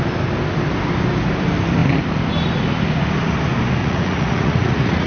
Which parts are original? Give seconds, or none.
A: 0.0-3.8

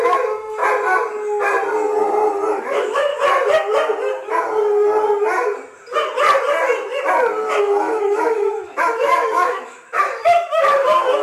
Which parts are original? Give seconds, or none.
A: 0.6-2.6; 3.1-7.6

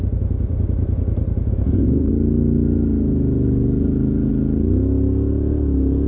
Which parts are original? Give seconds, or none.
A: 0.0-1.5; 2.1-6.1

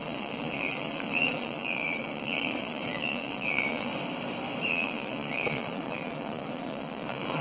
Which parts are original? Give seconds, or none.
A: 3.9-4.7

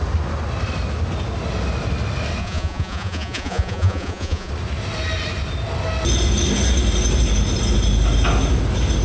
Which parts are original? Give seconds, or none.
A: 0.0-2.4; 4.5-9.0